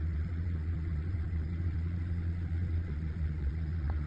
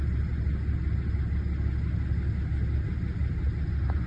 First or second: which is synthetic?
first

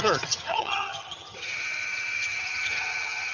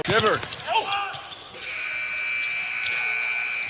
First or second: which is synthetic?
first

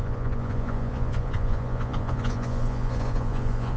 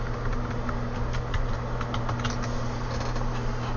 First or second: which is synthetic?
first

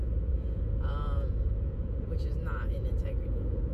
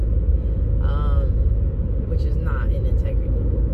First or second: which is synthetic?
first